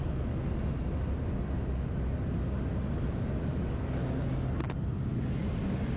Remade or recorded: recorded